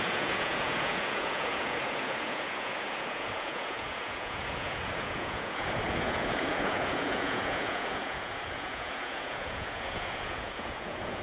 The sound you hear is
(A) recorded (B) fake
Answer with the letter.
B